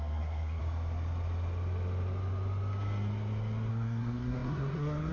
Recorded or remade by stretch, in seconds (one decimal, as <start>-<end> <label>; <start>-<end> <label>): 0.0-0.6 remade; 0.6-3.7 recorded; 3.7-5.1 remade